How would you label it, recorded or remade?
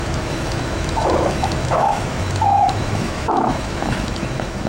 remade